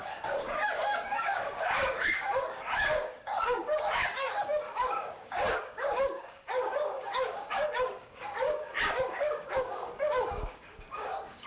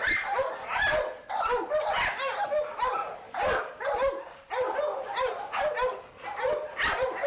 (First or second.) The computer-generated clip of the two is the first